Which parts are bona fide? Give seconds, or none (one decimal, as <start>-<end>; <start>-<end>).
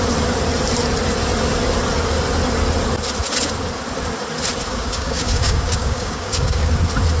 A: 0.0-4.7; 6.7-7.2